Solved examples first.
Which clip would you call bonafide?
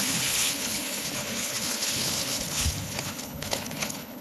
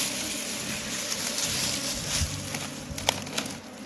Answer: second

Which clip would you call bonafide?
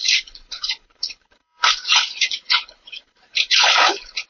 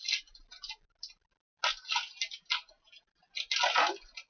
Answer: second